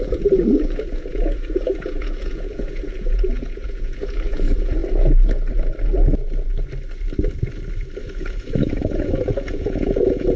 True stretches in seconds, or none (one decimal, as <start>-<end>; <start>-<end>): 4.8-8.0